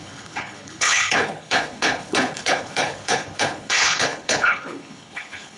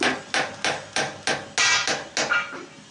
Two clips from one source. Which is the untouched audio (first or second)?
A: second